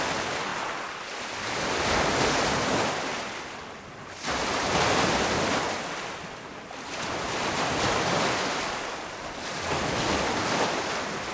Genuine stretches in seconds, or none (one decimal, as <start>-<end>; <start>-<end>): 0.0-11.3